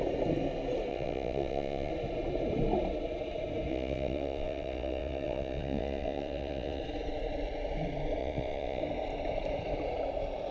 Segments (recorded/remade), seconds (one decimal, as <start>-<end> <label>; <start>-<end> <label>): 0.0-0.9 recorded; 0.9-1.9 remade; 1.9-3.7 recorded; 3.7-6.8 remade; 6.8-8.2 recorded; 8.2-8.8 remade; 8.8-10.5 recorded